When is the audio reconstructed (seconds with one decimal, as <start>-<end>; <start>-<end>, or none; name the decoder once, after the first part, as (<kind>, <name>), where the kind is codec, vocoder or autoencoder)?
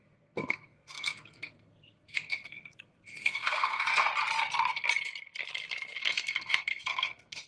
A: 0.0-4.1 (codec, SNAC); 6.0-7.5